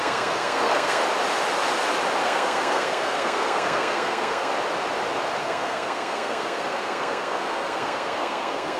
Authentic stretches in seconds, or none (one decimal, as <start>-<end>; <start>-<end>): 1.0-2.2; 4.5-5.4